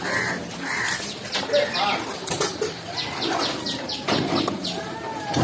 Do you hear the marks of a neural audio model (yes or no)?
no